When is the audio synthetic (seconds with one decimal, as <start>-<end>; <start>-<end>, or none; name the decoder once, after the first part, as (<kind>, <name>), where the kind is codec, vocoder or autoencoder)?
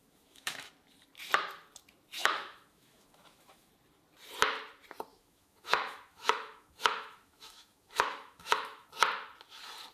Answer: 0.0-0.7 (autoencoder, DAC-VAE); 2.2-3.7; 5.1-8.9